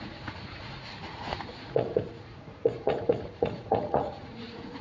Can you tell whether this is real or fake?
fake